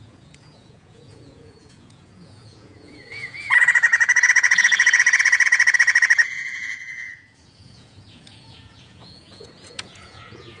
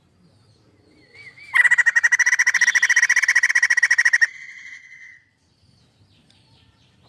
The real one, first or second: second